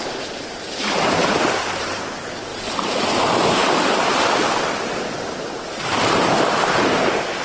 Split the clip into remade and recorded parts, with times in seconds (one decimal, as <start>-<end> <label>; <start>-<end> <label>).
0.0-2.5 remade; 2.5-3.2 recorded; 3.2-5.9 remade; 5.9-6.4 recorded; 6.4-7.4 remade